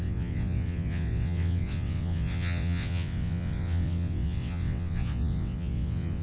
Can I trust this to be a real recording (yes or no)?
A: no